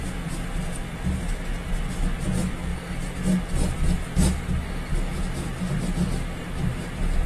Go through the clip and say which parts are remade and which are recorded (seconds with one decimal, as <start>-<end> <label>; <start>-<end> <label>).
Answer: 0.0-7.3 recorded